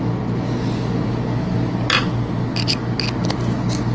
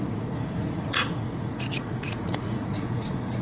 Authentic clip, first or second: first